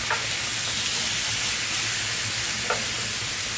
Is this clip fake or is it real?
real